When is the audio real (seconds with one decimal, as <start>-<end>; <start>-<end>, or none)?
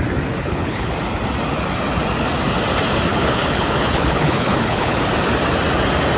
0.0-0.4; 0.9-3.1; 5.0-6.2